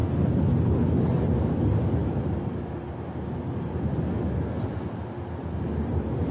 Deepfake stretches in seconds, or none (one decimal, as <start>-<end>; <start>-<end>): none